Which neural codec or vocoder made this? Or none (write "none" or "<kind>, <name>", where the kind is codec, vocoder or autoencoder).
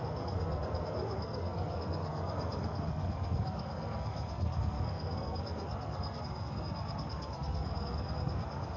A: codec, SNAC